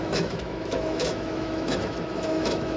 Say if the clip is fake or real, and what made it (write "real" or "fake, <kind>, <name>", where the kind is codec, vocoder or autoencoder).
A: fake, autoencoder, DAC-VAE